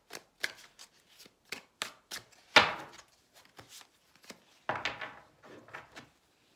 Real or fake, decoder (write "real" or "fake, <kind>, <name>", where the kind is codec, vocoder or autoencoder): real